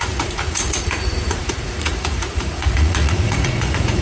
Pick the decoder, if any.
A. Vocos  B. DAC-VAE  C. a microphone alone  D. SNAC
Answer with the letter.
A